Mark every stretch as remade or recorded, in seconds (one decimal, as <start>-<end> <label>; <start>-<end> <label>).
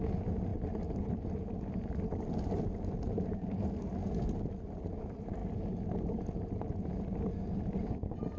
0.0-8.4 recorded